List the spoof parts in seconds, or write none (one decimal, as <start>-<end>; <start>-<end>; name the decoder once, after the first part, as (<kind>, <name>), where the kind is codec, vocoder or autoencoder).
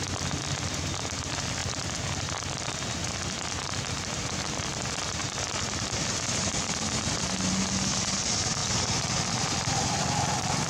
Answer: none